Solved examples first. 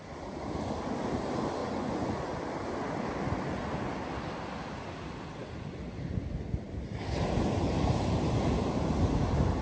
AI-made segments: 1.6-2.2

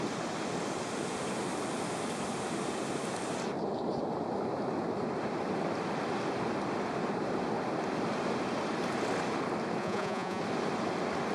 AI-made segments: 9.8-10.4

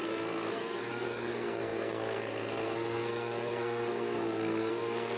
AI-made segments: 0.0-5.2

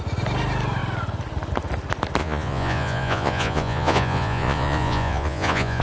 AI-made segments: 2.2-5.8

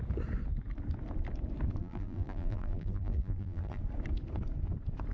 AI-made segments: 1.8-3.8

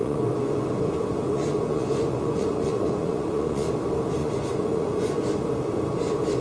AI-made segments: 0.0-3.7; 4.2-5.2

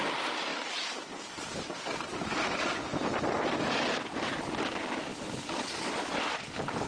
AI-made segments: 0.5-3.7